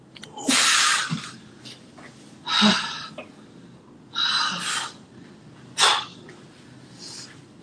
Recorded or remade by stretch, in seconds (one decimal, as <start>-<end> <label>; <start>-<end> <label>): 0.0-1.0 recorded; 1.0-3.1 remade; 3.1-7.6 recorded